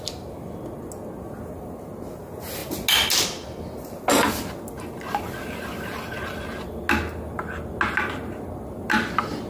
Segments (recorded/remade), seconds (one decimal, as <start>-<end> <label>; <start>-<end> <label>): 0.0-9.5 recorded